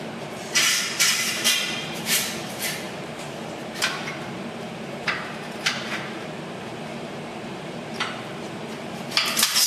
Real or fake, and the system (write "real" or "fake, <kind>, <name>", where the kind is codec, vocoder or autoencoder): fake, vocoder, BigVGAN v2